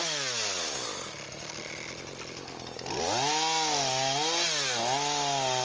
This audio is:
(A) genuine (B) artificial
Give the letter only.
A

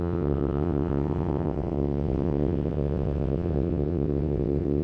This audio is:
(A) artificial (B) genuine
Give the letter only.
A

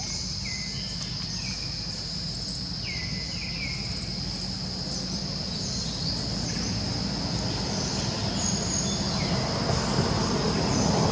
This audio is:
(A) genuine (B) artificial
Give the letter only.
A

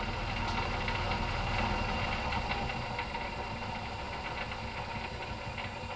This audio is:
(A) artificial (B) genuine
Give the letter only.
B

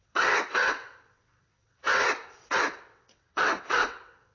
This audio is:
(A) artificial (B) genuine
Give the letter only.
A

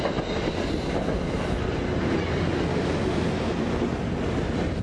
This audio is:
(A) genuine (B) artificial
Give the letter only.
A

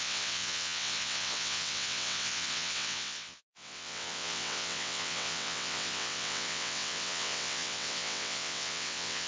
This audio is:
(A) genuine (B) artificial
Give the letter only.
B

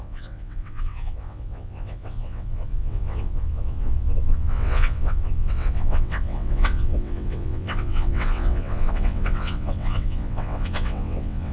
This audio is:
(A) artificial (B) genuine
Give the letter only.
A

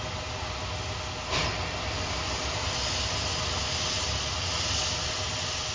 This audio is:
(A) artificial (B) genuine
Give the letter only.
B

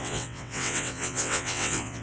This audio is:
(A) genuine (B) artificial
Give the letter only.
B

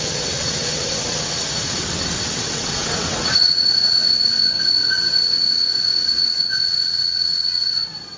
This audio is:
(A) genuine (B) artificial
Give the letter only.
B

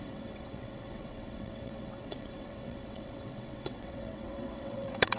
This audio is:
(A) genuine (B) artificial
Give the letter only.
B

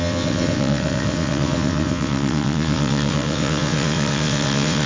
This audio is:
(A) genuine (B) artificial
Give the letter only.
B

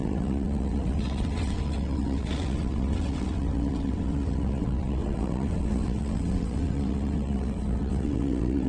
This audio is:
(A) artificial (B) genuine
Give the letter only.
A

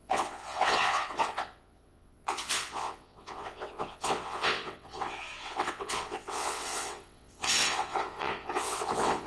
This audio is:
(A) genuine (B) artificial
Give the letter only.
B